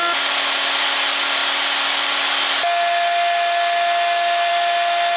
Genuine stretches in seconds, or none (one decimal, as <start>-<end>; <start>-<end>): 0.0-5.2